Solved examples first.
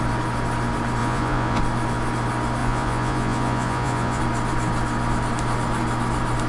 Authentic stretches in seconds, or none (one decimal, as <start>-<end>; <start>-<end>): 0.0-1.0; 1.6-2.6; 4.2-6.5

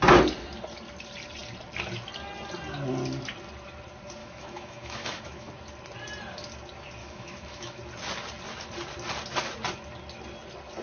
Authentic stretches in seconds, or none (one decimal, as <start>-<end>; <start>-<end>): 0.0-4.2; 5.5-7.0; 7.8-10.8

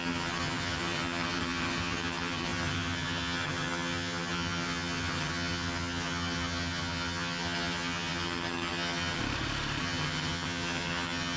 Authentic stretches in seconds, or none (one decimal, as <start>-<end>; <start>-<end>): 9.2-9.8

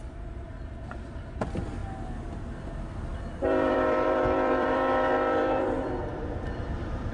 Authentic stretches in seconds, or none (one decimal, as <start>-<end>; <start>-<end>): 1.8-2.6

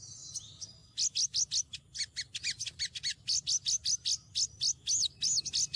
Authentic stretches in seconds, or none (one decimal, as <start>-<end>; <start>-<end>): 0.0-5.8

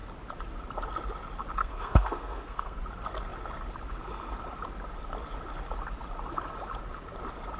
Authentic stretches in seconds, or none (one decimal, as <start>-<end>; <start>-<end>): 0.0-1.6; 2.8-7.6

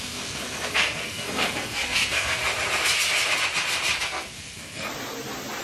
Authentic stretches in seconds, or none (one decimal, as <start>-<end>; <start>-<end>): 2.4-4.0; 4.9-5.6

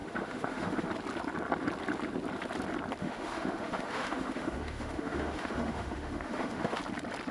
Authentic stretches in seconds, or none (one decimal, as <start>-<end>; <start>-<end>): 0.9-3.0; 6.8-7.3